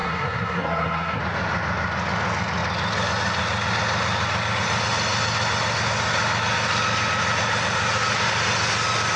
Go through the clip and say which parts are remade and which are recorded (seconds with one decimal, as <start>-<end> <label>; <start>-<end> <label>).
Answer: 0.0-1.2 remade; 1.2-9.2 recorded